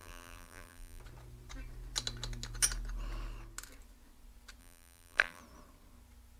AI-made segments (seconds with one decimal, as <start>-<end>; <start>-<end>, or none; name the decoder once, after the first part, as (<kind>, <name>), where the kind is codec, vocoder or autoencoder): 0.0-1.0 (vocoder, BigVGAN v2); 4.6-5.4